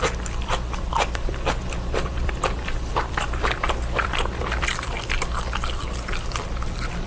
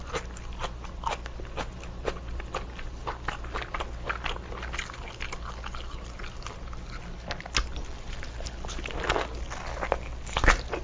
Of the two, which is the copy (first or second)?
first